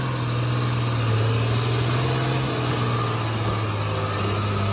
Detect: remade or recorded recorded